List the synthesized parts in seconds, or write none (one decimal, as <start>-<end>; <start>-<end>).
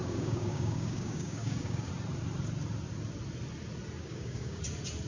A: 0.0-1.9; 4.0-4.6